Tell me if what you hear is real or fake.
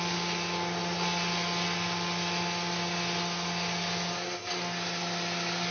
real